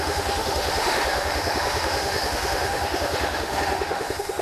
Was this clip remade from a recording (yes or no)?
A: yes